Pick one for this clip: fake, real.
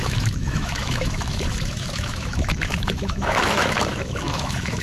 fake